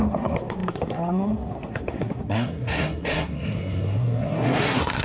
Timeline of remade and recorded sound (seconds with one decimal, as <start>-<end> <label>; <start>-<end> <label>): 0.0-5.0 remade

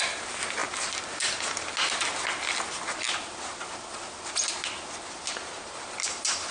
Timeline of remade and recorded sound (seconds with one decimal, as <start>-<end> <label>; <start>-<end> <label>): 0.0-6.5 recorded

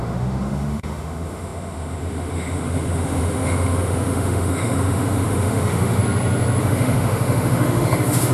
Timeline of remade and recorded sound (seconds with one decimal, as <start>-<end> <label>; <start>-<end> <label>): 0.0-6.0 remade; 6.0-6.6 recorded; 6.6-8.3 remade

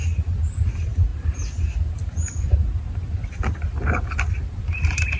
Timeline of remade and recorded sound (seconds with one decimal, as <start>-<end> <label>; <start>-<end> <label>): 0.0-5.2 recorded

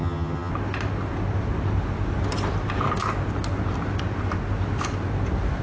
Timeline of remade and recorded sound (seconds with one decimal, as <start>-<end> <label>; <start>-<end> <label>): 0.0-0.5 remade; 0.5-5.6 recorded

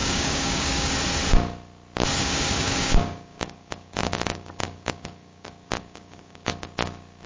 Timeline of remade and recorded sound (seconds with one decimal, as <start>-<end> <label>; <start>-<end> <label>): 0.0-0.9 remade; 0.9-2.2 recorded; 2.2-6.5 remade; 6.5-7.3 recorded

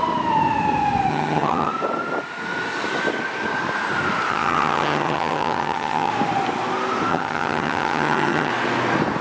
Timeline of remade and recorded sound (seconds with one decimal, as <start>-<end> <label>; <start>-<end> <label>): 0.0-1.1 recorded; 1.1-1.7 remade; 1.7-4.3 recorded; 4.3-6.1 remade; 6.1-7.1 recorded; 7.1-8.5 remade; 8.5-9.2 recorded

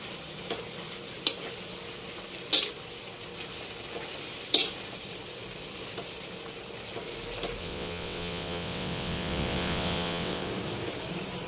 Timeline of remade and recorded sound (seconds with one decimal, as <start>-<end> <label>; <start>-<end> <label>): 0.0-7.6 recorded; 7.6-10.5 remade; 10.5-11.5 recorded